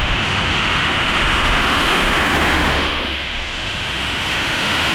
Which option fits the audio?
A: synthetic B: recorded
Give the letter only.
A